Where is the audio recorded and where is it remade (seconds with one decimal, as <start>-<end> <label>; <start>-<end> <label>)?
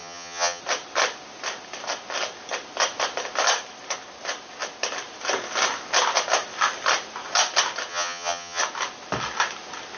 0.0-0.6 remade; 0.6-7.9 recorded; 7.9-8.6 remade; 8.6-10.0 recorded